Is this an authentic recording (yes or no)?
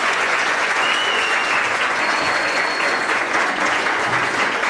no